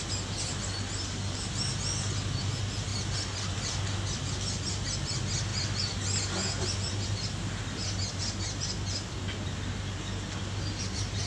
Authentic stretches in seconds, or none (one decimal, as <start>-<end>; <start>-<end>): 0.0-11.3